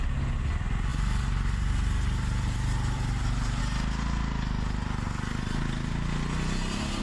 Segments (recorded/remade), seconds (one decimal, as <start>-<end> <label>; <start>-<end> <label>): 0.0-0.9 recorded; 0.9-3.6 remade; 3.6-7.0 recorded